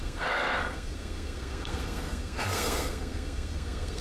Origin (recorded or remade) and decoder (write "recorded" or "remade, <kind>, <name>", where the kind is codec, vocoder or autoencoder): remade, codec, SNAC